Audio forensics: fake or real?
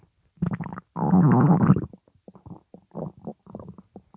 real